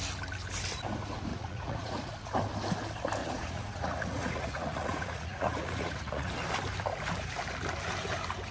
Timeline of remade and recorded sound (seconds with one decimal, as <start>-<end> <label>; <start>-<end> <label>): 0.0-1.3 recorded; 1.3-2.1 remade; 2.1-3.2 recorded; 3.2-6.3 remade; 6.3-8.5 recorded